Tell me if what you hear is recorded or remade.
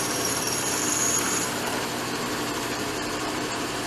remade